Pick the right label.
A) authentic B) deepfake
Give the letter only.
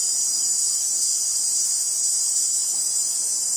A